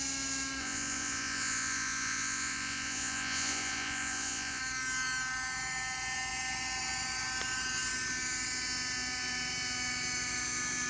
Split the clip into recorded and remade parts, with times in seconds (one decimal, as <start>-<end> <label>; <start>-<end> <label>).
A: 0.0-0.6 recorded; 0.6-4.6 remade; 4.6-10.9 recorded